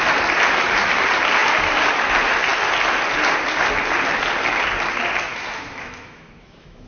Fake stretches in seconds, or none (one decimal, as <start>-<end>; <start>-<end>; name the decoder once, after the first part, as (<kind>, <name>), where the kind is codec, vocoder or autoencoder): 5.3-6.9 (autoencoder, DAC-VAE)